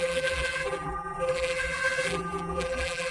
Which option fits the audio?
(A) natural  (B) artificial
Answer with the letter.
B